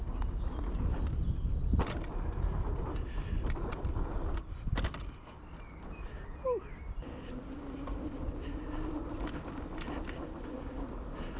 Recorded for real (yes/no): yes